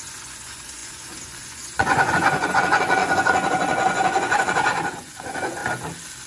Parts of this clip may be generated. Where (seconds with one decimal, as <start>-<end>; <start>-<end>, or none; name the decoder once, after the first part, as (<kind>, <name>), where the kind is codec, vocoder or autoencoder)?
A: 0.0-5.6 (vocoder, Vocos)